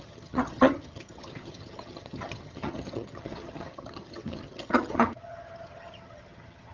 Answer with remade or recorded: remade